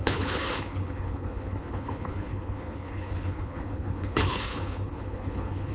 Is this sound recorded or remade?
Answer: remade